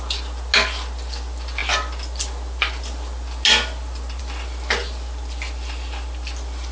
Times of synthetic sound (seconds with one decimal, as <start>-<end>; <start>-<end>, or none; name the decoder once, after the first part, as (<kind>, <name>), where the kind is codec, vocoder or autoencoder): none